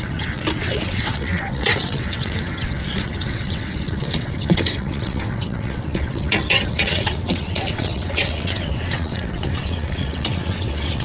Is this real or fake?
fake